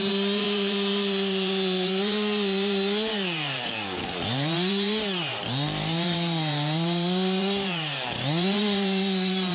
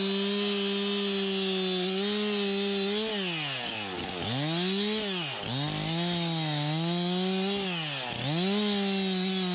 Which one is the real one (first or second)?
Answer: second